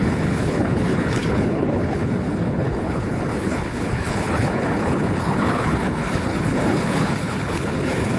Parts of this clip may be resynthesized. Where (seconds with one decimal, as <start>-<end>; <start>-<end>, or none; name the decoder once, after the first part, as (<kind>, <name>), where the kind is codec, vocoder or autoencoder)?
0.0-8.2 (codec, HILCodec)